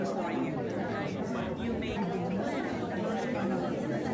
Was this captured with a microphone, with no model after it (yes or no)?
yes